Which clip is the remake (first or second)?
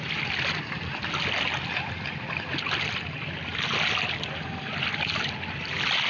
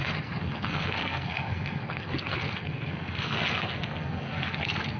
second